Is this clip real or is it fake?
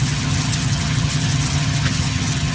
fake